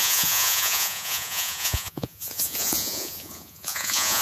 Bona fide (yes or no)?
no